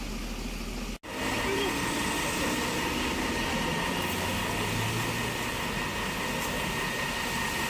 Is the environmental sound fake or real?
real